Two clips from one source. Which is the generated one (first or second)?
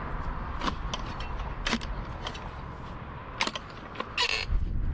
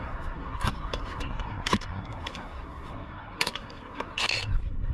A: second